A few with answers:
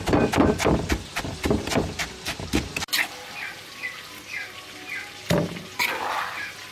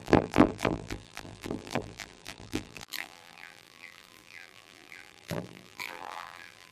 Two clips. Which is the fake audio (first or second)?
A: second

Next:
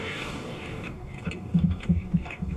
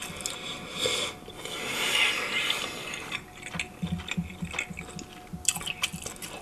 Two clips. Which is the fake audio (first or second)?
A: first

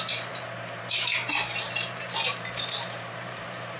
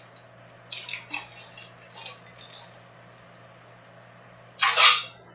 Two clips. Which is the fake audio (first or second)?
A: first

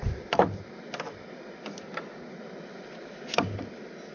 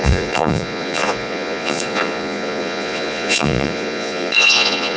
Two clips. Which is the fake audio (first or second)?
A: second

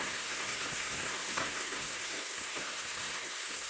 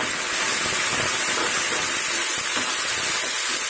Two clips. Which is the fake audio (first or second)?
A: first